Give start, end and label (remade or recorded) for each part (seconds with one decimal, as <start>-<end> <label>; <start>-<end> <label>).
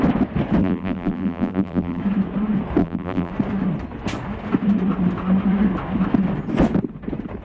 0.0-0.6 recorded; 0.6-2.0 remade; 2.0-2.8 recorded; 2.8-3.3 remade; 3.3-7.4 recorded